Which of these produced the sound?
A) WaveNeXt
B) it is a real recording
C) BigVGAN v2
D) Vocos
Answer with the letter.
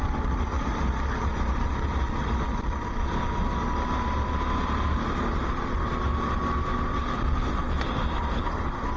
B